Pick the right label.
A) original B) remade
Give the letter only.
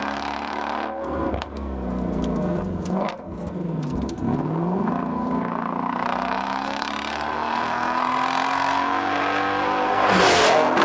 B